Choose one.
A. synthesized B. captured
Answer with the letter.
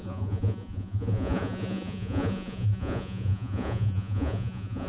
A